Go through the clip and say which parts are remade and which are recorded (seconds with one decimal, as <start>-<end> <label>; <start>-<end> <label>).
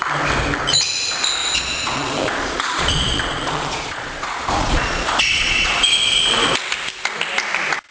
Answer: 0.0-1.4 recorded; 1.4-5.7 remade; 5.7-7.9 recorded